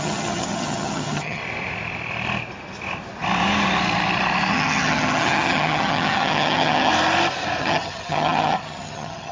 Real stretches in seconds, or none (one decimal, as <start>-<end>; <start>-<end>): 1.4-4.5; 6.9-7.6